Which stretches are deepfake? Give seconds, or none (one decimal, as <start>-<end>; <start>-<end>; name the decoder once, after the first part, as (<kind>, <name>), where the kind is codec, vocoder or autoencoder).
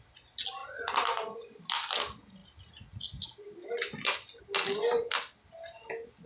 none